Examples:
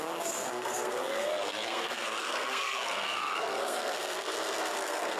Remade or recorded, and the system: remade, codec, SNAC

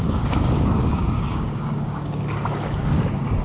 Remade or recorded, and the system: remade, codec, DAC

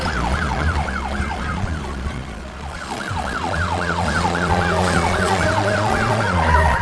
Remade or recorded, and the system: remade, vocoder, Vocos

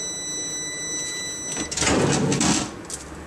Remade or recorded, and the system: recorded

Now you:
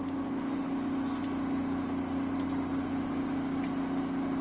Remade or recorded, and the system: recorded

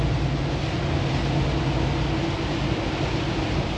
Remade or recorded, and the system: recorded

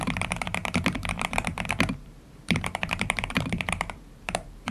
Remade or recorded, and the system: remade, vocoder, BigVGAN v2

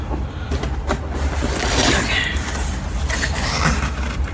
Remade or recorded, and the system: recorded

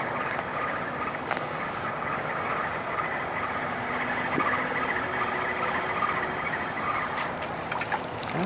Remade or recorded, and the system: recorded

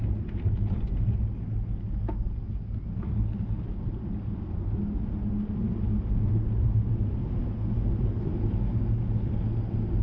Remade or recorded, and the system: recorded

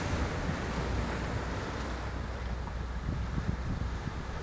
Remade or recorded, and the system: recorded